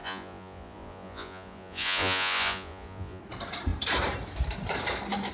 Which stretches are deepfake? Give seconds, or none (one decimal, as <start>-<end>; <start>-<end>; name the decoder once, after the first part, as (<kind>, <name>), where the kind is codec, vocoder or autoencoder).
0.0-3.2 (vocoder, Vocos)